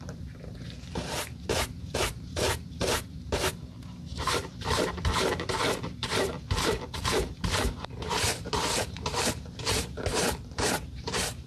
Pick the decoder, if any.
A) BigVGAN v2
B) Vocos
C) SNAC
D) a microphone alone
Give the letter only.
A